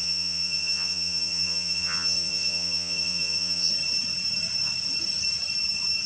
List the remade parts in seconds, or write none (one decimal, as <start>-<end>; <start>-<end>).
0.0-3.7